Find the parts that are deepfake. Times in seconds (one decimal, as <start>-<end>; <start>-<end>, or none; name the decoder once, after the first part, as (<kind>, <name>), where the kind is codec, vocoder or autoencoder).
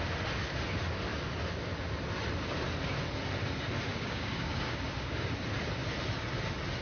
3.9-5.3 (codec, DAC)